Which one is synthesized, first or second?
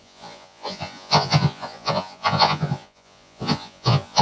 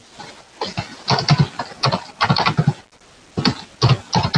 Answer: first